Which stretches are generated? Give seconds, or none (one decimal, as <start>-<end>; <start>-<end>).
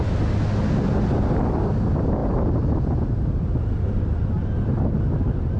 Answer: none